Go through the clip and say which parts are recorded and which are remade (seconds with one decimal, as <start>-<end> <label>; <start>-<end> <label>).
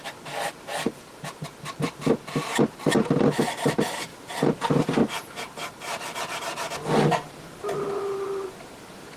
0.0-9.2 recorded